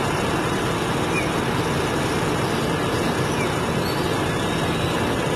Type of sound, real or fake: real